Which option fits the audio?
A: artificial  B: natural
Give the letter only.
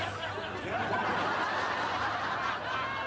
B